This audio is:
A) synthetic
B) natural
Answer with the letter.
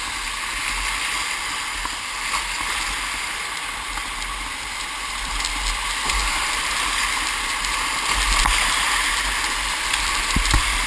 B